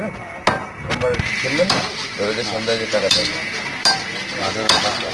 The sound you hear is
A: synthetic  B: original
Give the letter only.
B